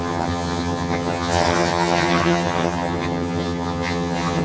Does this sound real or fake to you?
fake